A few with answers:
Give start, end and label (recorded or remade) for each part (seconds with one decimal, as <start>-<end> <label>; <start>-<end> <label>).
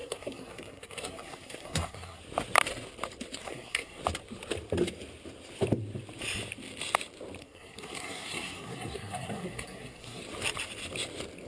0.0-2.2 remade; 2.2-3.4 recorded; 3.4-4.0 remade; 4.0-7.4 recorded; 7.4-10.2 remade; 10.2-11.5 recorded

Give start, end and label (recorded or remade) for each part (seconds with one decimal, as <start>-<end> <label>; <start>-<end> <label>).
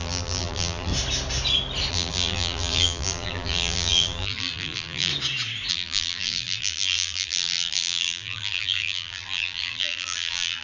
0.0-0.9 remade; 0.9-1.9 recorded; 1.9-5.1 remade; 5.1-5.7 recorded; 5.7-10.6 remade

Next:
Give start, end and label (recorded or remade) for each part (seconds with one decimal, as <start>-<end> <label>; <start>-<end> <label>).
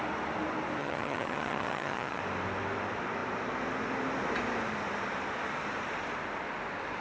0.0-0.8 recorded; 0.8-2.2 remade; 2.2-7.0 recorded